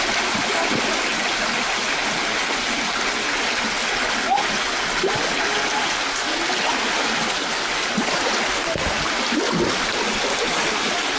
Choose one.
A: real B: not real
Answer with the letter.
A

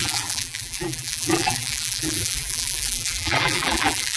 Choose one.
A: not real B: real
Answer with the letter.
A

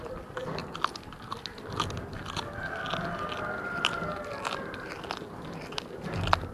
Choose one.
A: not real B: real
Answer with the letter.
B